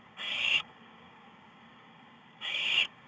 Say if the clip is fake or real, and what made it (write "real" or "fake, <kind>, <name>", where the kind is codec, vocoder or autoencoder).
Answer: fake, codec, DAC